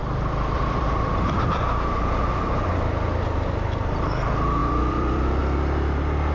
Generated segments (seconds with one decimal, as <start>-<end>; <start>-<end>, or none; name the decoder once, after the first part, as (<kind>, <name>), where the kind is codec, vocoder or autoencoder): 0.0-2.2 (vocoder, BigVGAN v2); 4.6-5.4